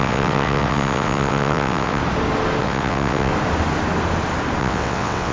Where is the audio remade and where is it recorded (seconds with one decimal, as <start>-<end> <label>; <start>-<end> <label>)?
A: 0.0-2.0 remade; 2.0-2.6 recorded; 2.6-3.3 remade; 3.3-4.6 recorded; 4.6-5.3 remade